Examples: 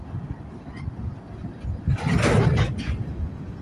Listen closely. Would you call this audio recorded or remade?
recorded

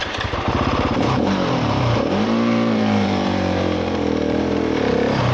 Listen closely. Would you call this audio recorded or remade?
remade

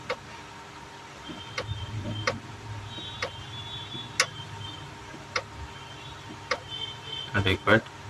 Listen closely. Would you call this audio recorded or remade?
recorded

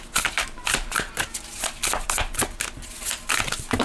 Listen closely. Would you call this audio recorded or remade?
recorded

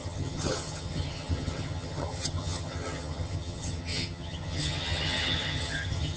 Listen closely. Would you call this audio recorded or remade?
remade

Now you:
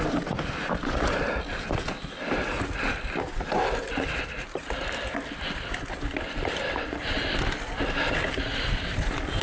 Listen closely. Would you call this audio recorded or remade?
remade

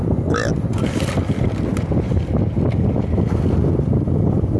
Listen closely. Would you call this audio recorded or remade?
recorded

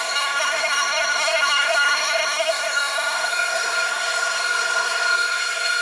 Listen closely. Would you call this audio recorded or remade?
remade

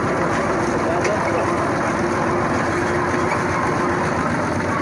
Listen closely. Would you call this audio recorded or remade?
recorded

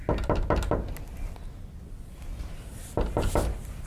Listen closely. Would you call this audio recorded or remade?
recorded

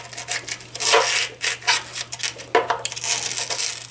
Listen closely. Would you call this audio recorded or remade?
recorded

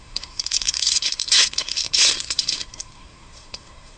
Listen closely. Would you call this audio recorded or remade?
remade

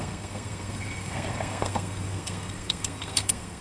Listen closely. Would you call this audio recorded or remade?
remade